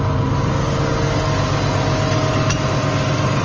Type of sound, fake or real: real